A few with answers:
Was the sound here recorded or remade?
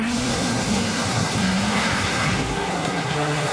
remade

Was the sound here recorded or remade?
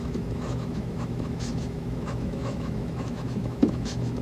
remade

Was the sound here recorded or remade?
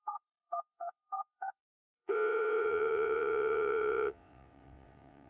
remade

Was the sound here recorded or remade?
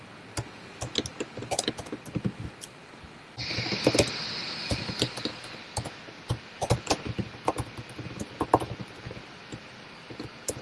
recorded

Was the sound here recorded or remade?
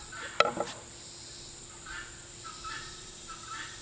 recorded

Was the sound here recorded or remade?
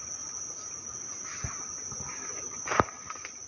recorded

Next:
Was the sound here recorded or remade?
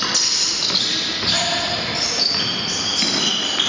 recorded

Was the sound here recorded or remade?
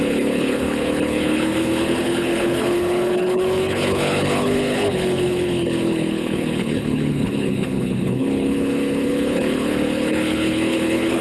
remade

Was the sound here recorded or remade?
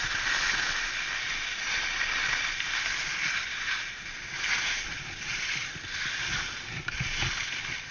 recorded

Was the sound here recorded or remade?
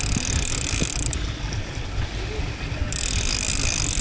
recorded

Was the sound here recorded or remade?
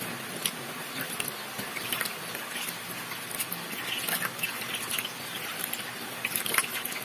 recorded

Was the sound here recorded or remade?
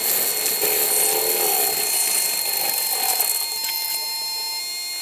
recorded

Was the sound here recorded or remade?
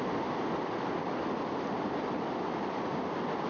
recorded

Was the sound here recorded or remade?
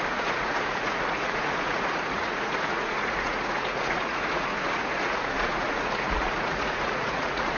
remade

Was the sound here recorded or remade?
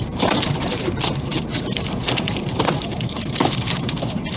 remade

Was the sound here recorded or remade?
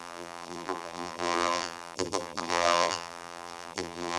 remade